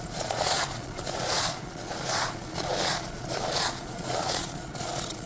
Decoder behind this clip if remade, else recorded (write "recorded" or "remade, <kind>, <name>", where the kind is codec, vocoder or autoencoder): remade, vocoder, Vocos